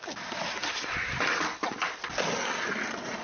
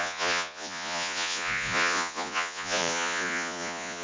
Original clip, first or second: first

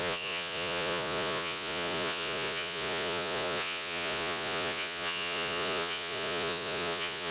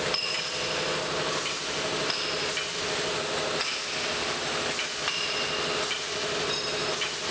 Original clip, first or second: second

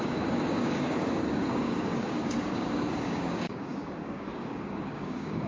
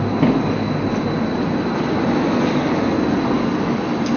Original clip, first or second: second